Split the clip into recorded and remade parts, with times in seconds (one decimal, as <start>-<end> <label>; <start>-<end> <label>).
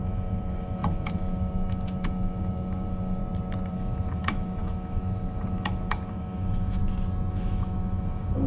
0.0-3.2 remade; 3.2-3.7 recorded; 3.7-6.8 remade; 6.8-7.3 recorded; 7.3-8.5 remade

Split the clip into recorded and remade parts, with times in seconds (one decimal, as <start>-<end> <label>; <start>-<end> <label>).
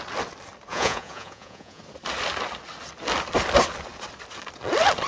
0.0-0.7 recorded; 0.7-1.8 remade; 1.8-5.1 recorded